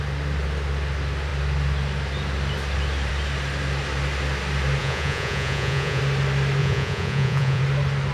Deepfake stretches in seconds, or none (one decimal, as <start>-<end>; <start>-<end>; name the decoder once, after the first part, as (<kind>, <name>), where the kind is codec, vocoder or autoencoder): 4.8-6.0 (vocoder, Vocos); 6.6-7.6